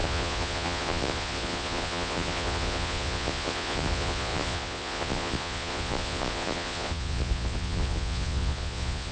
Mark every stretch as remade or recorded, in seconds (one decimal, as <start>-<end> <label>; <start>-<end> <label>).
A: 0.0-9.1 remade